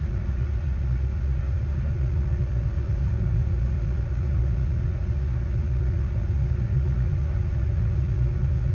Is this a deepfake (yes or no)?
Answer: yes